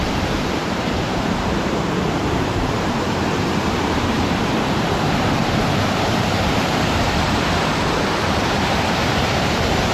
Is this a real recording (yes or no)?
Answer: no